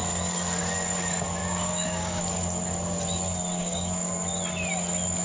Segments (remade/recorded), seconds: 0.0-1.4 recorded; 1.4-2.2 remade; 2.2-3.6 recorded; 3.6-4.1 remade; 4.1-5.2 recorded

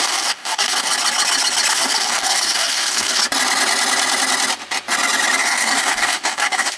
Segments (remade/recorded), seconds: 0.0-0.9 remade; 0.9-1.7 recorded; 1.7-3.2 remade; 3.2-5.4 recorded; 5.4-6.8 remade